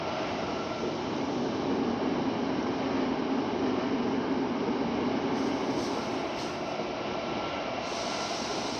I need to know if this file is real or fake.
real